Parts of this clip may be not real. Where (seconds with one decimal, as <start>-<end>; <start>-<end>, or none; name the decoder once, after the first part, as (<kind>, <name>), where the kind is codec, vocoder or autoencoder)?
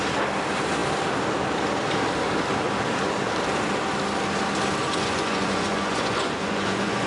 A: 4.8-7.1 (vocoder, Vocos)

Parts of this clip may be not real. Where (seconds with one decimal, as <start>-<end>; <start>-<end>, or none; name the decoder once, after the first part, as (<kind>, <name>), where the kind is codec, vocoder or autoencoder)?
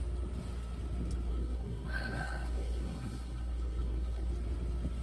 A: 1.3-4.3 (codec, SNAC)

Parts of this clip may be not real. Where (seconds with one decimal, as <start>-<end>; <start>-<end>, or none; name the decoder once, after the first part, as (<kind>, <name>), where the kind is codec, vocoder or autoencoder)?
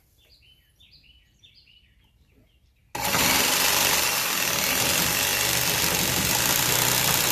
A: none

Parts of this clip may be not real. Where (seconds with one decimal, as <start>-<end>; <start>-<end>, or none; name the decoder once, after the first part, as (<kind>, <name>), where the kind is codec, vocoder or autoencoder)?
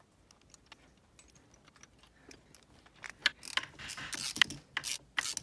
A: none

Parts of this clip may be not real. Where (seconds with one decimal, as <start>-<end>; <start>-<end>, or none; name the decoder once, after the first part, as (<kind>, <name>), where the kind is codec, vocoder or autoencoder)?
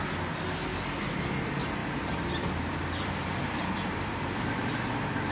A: 1.8-5.3 (vocoder, BigVGAN v2)